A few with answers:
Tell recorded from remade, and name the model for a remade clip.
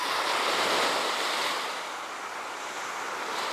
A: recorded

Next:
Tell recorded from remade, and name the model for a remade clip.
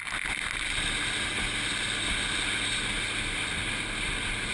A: recorded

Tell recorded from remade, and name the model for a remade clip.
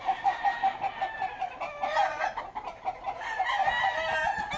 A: recorded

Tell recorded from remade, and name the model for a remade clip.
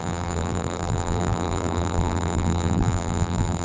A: remade, vocoder, BigVGAN v2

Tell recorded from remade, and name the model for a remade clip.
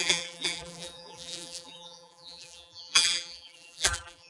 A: remade, vocoder, BigVGAN v2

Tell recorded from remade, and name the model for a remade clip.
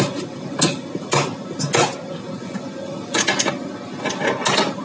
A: recorded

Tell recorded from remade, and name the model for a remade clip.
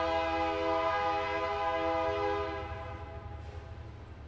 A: recorded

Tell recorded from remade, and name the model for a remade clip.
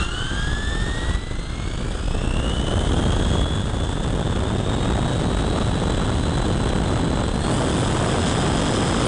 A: recorded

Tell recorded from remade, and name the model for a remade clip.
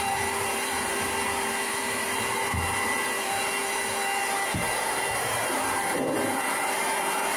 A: remade, vocoder, BigVGAN v2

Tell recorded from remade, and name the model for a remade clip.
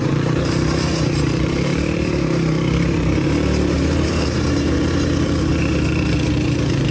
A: remade, vocoder, BigVGAN v2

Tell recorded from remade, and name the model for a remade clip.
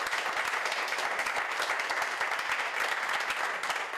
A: recorded